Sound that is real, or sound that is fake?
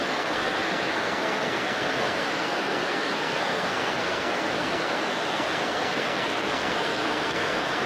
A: fake